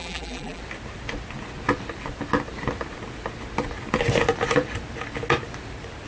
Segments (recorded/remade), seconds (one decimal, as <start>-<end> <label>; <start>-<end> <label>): 0.0-0.6 remade; 0.6-6.1 recorded